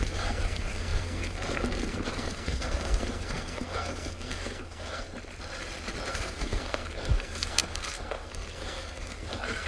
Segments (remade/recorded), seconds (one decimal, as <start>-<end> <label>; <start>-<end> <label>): 0.0-5.1 remade; 5.1-6.1 recorded; 6.1-9.7 remade